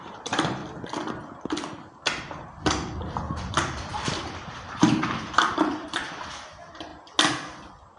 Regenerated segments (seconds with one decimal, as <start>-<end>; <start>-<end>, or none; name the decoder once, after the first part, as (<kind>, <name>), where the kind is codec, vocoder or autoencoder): 0.0-0.6 (vocoder, BigVGAN v2); 3.5-6.9